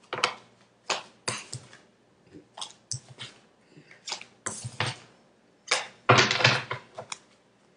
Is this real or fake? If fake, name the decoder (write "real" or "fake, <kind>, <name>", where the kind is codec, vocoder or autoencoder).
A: real